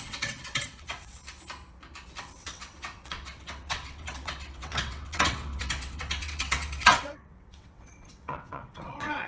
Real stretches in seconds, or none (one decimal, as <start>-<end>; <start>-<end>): 1.2-2.2